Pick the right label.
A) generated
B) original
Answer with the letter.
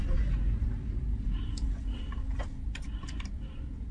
B